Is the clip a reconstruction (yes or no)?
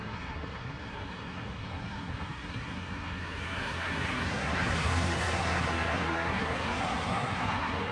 yes